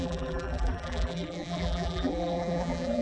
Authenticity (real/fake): fake